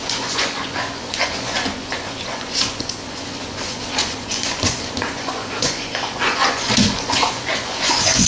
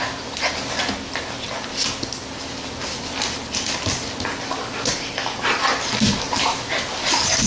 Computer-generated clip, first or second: first